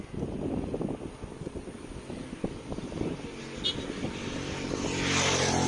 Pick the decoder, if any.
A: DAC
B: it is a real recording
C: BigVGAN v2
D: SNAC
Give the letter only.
B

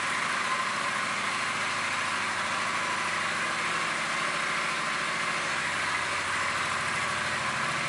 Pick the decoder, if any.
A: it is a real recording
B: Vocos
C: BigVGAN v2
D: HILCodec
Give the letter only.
A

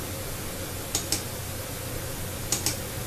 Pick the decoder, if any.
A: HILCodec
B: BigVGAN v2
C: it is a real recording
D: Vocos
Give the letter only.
C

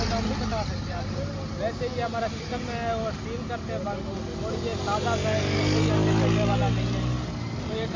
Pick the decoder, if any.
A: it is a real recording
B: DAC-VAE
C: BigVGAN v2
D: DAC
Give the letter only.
A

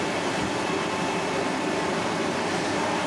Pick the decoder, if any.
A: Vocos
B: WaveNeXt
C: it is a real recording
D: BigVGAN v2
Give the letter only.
C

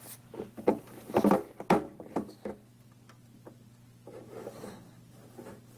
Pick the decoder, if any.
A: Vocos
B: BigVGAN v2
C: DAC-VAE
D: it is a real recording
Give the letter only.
D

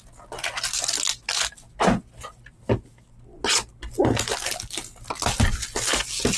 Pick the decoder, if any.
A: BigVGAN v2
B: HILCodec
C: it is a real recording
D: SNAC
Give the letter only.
C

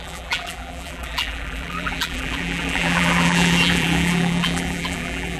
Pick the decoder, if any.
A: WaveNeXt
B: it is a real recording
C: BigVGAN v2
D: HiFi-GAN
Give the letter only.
C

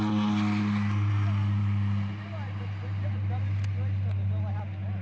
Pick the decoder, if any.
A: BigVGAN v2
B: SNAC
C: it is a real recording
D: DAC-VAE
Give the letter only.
C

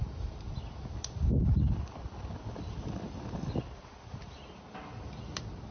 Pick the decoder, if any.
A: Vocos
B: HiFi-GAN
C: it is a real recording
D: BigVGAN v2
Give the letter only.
C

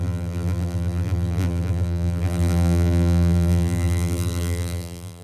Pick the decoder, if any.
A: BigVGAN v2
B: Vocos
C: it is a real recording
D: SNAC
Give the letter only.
A